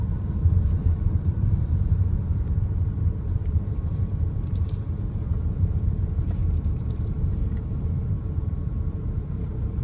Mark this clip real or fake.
fake